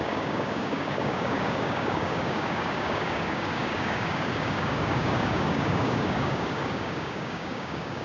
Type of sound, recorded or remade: remade